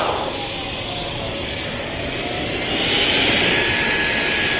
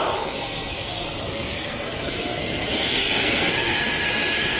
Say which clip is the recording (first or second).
first